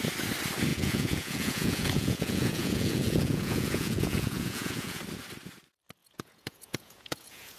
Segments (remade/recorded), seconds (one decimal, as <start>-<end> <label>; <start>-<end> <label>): 0.0-0.7 recorded; 0.7-5.0 remade; 5.0-6.0 recorded; 6.0-7.6 remade